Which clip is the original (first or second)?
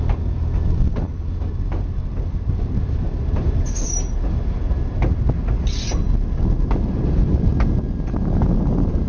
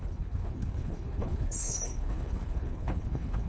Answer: first